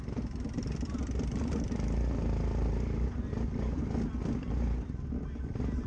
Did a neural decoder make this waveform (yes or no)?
no